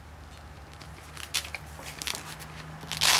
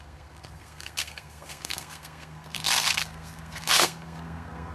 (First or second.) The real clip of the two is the first